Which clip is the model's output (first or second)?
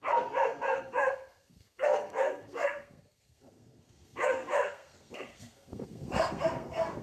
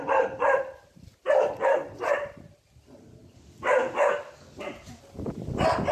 first